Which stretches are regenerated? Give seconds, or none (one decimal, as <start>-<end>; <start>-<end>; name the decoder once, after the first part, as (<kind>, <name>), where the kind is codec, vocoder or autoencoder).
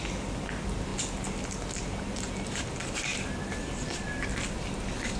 none